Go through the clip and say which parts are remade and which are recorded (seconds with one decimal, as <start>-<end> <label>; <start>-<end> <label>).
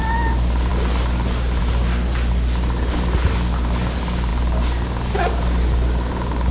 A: 0.0-6.5 recorded